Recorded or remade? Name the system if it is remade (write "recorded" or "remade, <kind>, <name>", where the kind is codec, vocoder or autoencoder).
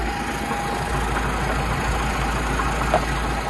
recorded